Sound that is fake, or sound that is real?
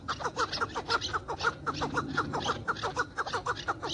real